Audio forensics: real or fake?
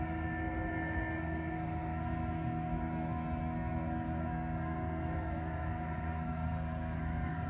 fake